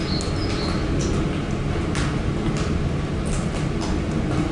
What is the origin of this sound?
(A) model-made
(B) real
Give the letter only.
B